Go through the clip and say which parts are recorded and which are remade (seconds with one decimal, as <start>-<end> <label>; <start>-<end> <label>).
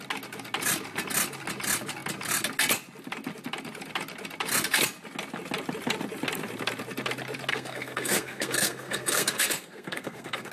0.0-7.5 recorded; 7.5-10.5 remade